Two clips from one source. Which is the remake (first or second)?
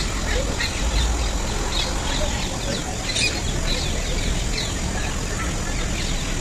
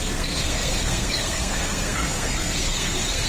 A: second